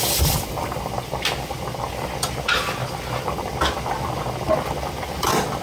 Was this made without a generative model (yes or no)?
yes